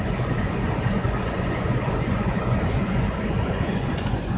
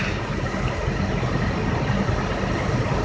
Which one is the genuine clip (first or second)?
second